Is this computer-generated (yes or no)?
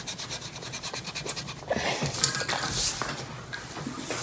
no